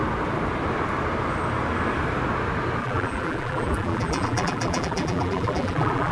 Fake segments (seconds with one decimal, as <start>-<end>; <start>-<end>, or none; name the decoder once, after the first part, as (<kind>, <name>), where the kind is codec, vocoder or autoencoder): 2.8-6.1 (vocoder, BigVGAN v2)